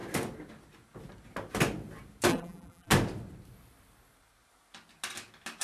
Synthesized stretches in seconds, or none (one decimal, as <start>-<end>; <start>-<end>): 2.3-2.9